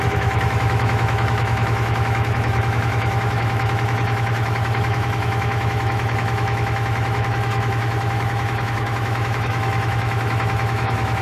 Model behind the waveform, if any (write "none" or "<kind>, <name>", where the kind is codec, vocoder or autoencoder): autoencoder, DAC-VAE